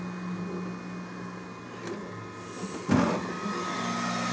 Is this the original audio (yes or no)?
yes